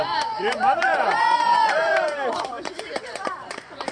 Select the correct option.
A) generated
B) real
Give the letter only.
A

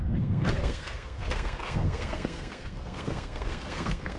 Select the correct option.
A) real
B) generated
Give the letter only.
B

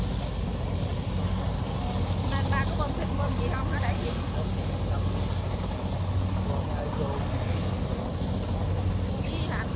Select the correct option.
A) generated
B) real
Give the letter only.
B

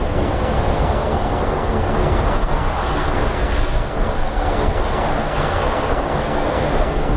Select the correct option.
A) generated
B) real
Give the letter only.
A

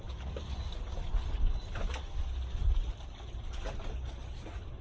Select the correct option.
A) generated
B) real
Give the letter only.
B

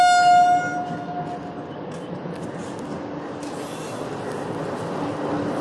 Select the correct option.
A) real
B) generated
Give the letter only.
A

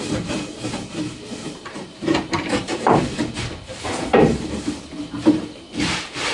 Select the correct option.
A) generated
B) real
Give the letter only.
A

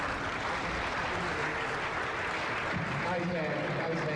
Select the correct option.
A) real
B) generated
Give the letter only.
A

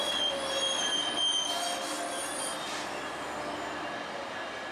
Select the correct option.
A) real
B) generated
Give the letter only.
A